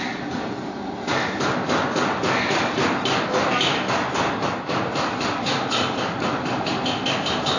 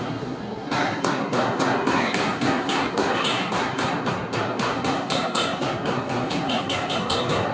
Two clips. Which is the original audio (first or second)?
first